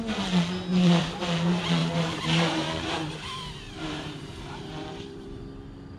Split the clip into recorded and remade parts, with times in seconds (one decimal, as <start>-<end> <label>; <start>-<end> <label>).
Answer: 0.0-0.7 recorded; 0.7-1.2 remade; 1.2-1.8 recorded; 1.8-5.4 remade; 5.4-6.0 recorded